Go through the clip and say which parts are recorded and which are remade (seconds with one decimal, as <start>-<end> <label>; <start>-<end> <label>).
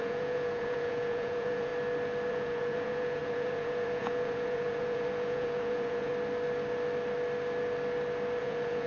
0.0-1.7 remade; 1.7-2.3 recorded; 2.3-6.1 remade; 6.1-8.4 recorded; 8.4-8.9 remade